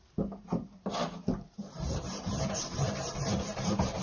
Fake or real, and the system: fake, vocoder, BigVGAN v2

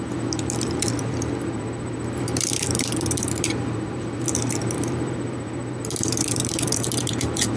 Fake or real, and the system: fake, vocoder, BigVGAN v2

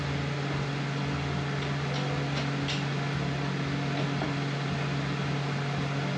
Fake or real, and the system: real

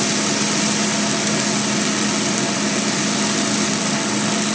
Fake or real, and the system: real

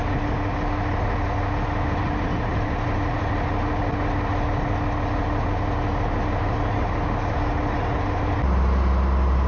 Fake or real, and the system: real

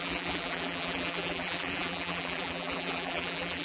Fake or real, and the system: fake, vocoder, BigVGAN v2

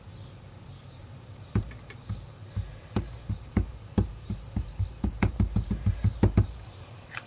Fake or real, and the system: fake, vocoder, BigVGAN v2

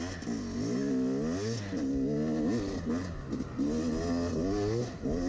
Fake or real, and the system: real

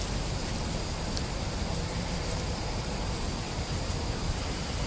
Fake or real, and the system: fake, vocoder, BigVGAN v2